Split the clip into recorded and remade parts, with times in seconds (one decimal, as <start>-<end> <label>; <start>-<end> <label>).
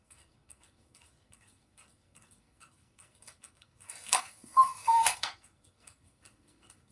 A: 0.0-6.9 remade